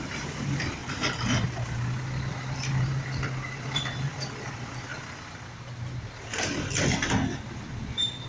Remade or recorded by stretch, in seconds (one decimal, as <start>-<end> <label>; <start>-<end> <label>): 0.0-0.8 remade; 0.8-2.3 recorded; 2.3-4.9 remade; 4.9-8.3 recorded